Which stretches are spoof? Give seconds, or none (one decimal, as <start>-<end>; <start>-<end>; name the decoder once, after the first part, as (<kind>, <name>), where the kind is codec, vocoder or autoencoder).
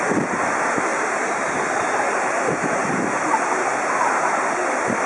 0.9-3.2 (vocoder, BigVGAN v2); 3.7-4.4